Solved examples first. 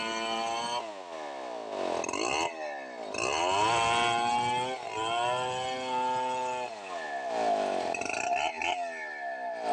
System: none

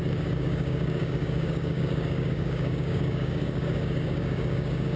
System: codec, DAC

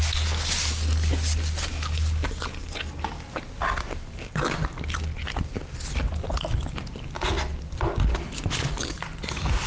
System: none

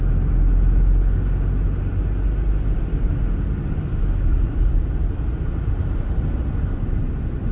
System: none